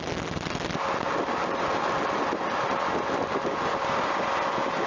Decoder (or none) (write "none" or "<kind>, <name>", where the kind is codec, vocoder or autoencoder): none